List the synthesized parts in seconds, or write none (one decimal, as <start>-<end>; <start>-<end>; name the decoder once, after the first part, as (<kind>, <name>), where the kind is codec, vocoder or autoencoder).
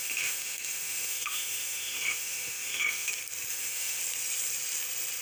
0.0-3.1 (autoencoder, DAC-VAE); 3.5-4.0